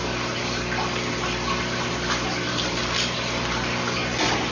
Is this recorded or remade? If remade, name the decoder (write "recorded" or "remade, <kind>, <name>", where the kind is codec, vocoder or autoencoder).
recorded